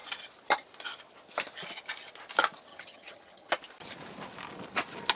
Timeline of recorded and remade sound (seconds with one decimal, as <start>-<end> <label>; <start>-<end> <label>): 0.0-2.7 recorded; 2.7-3.5 remade; 3.5-5.2 recorded